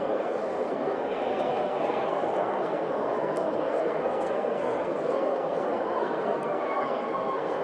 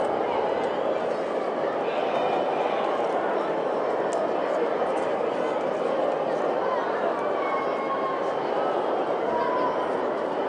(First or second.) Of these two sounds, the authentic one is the second